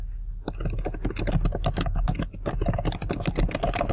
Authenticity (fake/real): real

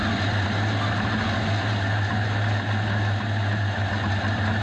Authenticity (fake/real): real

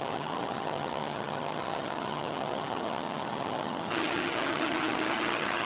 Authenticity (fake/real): fake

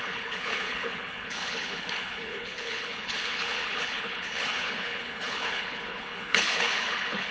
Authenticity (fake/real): fake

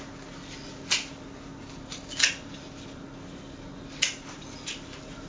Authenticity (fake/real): real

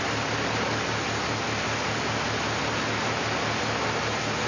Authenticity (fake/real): real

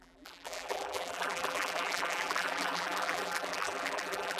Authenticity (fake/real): fake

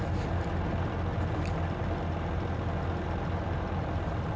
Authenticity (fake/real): real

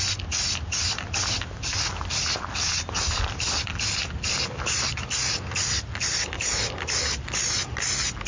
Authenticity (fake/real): real